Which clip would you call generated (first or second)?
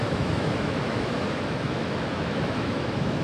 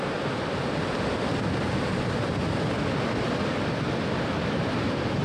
first